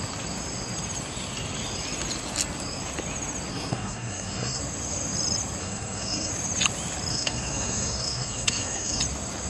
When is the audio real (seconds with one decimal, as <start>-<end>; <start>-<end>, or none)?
0.0-3.5; 4.6-5.6; 6.3-7.1; 9.0-9.5